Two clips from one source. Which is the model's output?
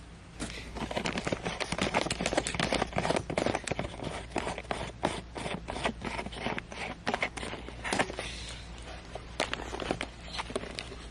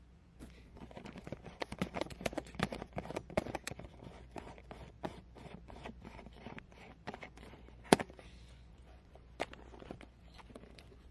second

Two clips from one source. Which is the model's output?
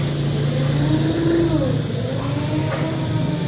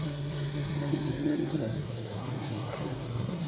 second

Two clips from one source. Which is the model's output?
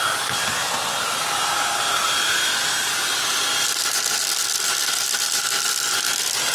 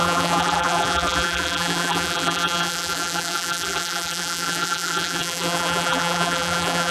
second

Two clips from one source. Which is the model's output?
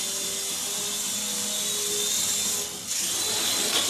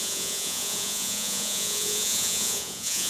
second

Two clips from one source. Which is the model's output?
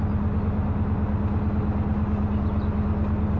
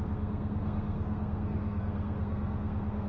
second